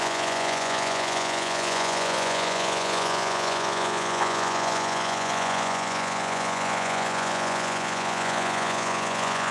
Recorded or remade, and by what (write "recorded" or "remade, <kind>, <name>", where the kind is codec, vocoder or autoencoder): remade, vocoder, Vocos